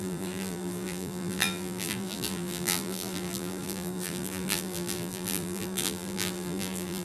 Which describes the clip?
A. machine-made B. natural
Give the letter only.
A